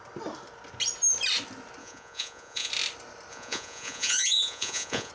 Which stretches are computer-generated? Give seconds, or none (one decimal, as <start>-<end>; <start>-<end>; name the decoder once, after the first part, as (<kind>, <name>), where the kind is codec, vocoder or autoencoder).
1.8-2.7 (vocoder, Vocos); 3.3-5.1